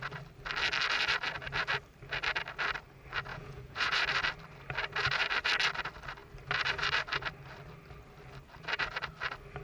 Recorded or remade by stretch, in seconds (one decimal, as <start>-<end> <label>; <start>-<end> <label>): 0.0-3.3 recorded; 3.3-4.0 remade; 4.0-9.6 recorded